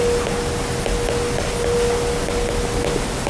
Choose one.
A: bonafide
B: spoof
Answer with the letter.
A